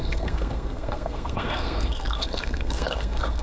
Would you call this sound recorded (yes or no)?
no